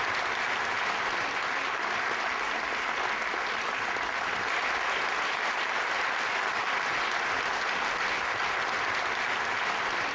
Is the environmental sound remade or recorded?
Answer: recorded